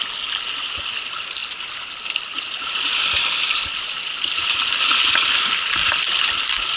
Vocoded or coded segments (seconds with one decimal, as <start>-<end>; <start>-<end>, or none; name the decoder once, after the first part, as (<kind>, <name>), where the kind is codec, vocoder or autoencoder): none